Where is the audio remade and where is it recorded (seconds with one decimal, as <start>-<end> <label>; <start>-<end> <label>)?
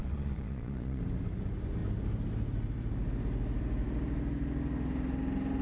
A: 0.0-1.0 remade; 1.0-5.6 recorded